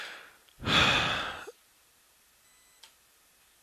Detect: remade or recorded recorded